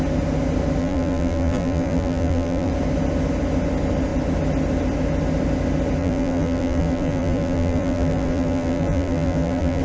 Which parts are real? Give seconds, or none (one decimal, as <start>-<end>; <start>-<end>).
0.0-0.8; 2.7-6.0